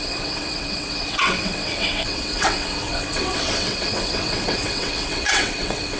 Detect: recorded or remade remade